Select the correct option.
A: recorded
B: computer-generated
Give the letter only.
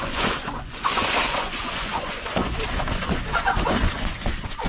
B